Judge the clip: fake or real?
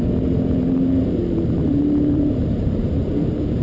fake